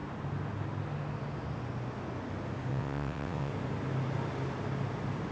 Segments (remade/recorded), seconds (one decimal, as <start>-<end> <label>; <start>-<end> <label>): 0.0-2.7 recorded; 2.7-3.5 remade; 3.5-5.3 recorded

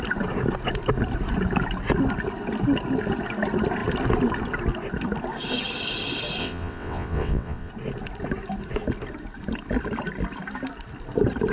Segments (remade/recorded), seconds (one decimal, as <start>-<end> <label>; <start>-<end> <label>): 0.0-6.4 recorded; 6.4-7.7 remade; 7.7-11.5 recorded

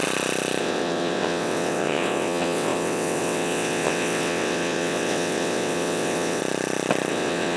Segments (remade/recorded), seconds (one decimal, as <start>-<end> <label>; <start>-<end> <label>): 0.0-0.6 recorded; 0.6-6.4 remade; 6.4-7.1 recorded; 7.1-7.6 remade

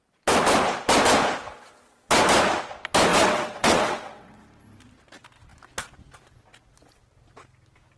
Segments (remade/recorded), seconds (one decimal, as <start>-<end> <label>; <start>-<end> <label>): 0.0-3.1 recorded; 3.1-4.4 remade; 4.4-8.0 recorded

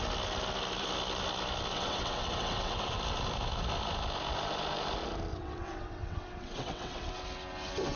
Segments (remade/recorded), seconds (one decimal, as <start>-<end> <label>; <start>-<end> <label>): 0.0-1.7 recorded; 1.7-3.0 remade; 3.0-5.3 recorded; 5.3-7.1 remade; 7.1-8.0 recorded

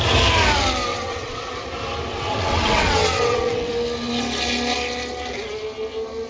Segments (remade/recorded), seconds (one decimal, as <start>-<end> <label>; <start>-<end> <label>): 0.0-0.9 recorded; 0.9-1.5 remade; 1.5-2.1 recorded; 2.1-3.7 remade; 3.7-6.3 recorded